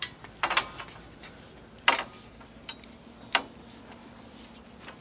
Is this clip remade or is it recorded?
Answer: recorded